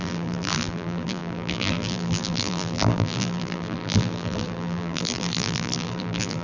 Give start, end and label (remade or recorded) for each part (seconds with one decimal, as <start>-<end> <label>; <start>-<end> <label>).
0.0-6.4 remade